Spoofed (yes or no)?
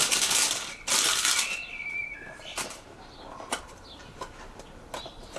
yes